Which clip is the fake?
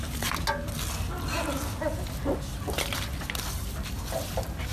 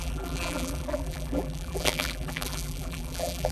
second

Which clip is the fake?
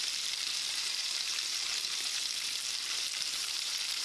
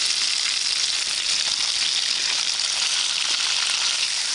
first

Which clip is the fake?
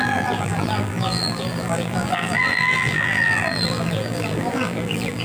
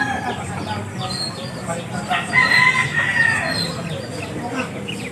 first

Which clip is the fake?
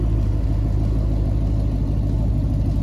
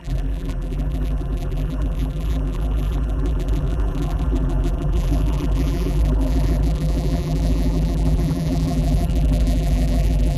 second